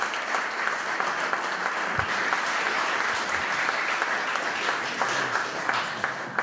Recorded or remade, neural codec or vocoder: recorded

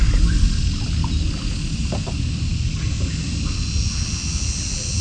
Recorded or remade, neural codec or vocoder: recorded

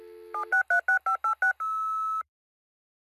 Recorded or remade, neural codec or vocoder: recorded